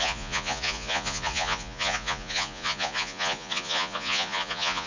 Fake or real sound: fake